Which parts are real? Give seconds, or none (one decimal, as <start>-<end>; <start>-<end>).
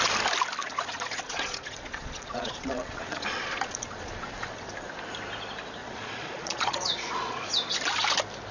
0.0-0.6; 4.7-5.8; 7.5-8.5